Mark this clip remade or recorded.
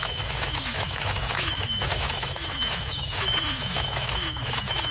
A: remade